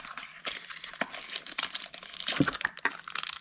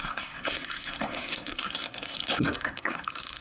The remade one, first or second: second